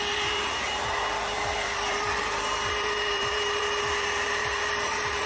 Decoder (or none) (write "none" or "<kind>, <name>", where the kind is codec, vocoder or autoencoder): vocoder, BigVGAN v2